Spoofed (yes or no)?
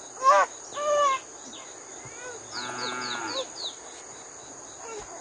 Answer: no